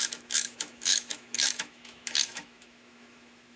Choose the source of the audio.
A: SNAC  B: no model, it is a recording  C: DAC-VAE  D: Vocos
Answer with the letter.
C